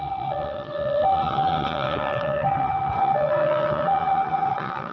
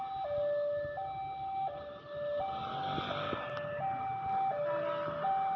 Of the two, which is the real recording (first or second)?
second